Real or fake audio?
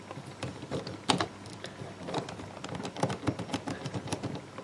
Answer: real